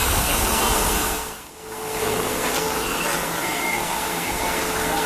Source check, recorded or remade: remade